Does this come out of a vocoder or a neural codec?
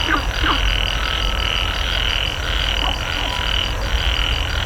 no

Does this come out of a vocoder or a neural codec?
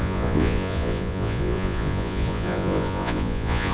yes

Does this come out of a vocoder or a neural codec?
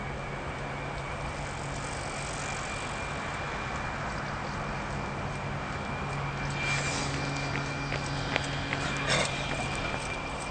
no